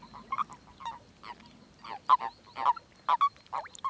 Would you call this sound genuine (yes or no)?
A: yes